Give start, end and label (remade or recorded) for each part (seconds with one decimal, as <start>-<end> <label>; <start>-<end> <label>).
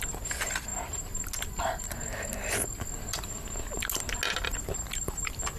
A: 0.0-5.6 recorded